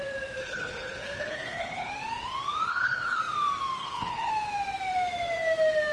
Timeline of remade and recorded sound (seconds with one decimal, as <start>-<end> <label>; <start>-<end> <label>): 0.0-0.4 recorded; 0.4-1.9 remade; 1.9-2.7 recorded; 2.7-3.2 remade; 3.2-3.8 recorded; 3.8-4.3 remade; 4.3-5.9 recorded